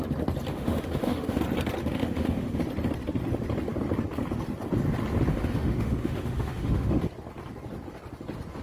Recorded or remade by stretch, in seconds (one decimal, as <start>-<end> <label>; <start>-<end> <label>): 0.0-0.5 recorded; 0.5-1.4 remade; 1.4-1.8 recorded; 1.8-2.6 remade; 2.6-5.3 recorded; 5.3-7.0 remade; 7.0-8.6 recorded